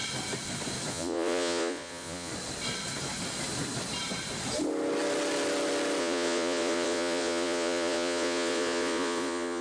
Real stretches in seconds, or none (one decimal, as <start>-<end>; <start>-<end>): 0.0-0.9; 2.3-6.0